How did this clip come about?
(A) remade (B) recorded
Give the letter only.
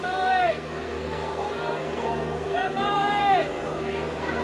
A